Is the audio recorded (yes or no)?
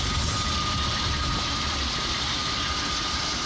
yes